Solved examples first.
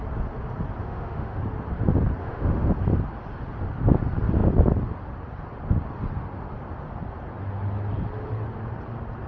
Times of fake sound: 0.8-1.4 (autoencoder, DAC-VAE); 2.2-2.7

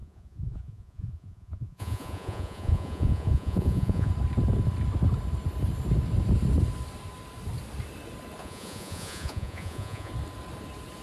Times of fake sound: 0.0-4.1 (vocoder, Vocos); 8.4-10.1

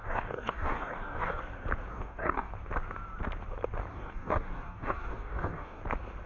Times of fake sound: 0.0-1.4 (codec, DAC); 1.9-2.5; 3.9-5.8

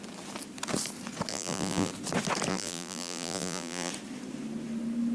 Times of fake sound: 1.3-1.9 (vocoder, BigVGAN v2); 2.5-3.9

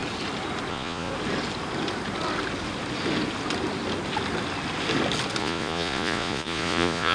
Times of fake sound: 0.7-1.1 (vocoder, Vocos); 5.4-7.1

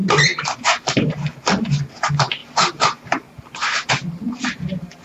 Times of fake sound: 2.4-3.9 (vocoder, BigVGAN v2)

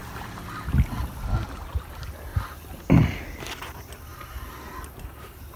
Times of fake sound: 2.3-2.8 (vocoder, BigVGAN v2)